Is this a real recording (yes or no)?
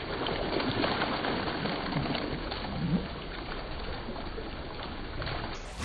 yes